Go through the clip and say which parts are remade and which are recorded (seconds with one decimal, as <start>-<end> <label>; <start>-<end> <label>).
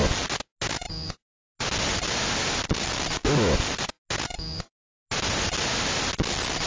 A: 0.0-6.7 recorded